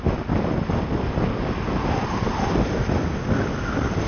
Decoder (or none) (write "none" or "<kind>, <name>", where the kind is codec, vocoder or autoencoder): none